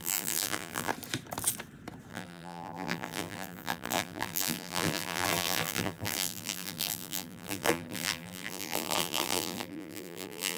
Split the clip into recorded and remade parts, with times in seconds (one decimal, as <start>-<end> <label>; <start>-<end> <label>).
0.0-0.9 remade; 0.9-2.1 recorded; 2.1-10.6 remade